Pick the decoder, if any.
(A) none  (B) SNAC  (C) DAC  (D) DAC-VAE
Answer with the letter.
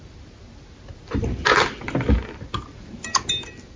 A